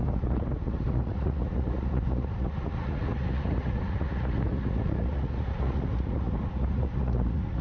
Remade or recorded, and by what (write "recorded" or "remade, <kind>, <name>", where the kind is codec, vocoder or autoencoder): remade, vocoder, Vocos